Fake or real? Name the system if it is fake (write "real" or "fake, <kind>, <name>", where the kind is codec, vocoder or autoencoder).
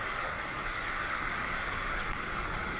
fake, codec, DAC